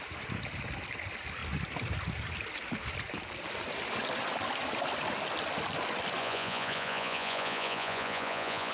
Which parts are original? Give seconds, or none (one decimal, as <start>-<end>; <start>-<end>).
0.0-6.2